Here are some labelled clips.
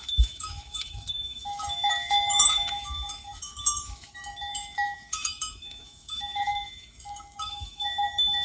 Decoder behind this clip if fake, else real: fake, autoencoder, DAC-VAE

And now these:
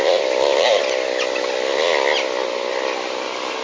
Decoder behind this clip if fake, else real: real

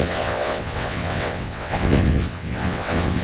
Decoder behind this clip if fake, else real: fake, vocoder, WaveNeXt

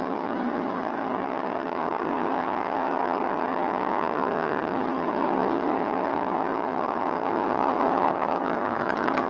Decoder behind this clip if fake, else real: fake, vocoder, HiFi-GAN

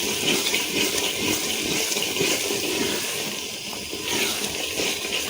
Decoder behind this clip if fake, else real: real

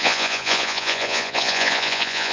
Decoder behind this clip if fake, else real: fake, vocoder, Vocos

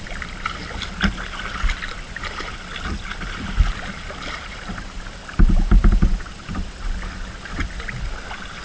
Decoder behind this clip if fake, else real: real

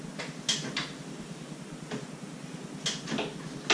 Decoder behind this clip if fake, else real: real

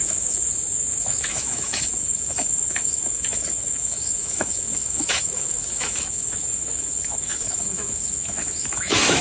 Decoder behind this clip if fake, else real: fake, autoencoder, DAC-VAE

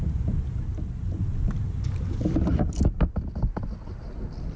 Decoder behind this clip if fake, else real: real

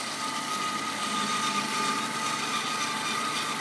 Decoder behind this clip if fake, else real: real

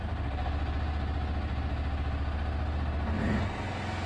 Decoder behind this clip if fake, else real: real